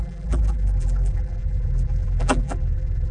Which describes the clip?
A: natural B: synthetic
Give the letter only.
B